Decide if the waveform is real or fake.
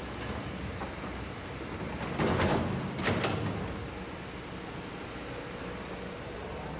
real